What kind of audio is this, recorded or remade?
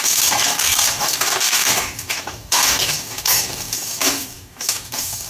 remade